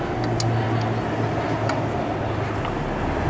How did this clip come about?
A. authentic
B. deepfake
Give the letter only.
A